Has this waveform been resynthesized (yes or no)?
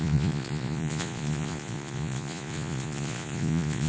yes